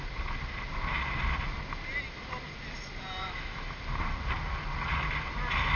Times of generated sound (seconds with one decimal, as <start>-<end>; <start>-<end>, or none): 3.2-3.8